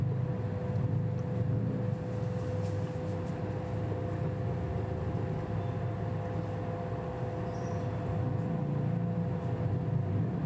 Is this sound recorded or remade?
recorded